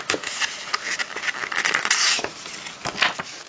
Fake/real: real